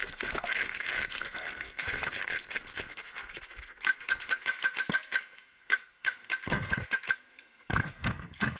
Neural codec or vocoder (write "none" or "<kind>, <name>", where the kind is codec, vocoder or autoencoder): codec, SNAC